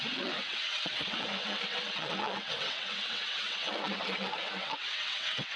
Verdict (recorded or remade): remade